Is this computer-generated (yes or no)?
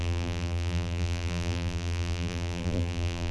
yes